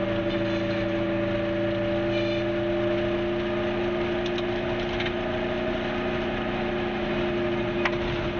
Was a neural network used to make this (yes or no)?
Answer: no